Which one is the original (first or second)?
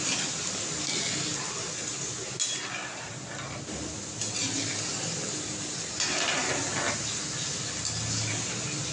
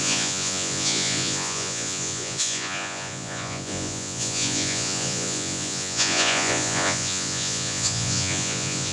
first